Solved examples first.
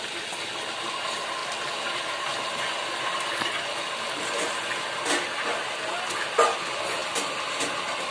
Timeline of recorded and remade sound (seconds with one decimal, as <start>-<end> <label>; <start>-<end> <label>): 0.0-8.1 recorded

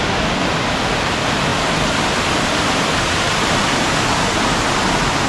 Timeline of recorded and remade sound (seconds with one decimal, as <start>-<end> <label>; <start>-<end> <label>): 0.0-5.3 recorded

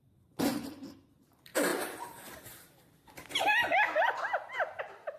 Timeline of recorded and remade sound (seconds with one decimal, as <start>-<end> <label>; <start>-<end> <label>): 0.0-1.7 remade; 1.7-4.8 recorded; 4.8-5.2 remade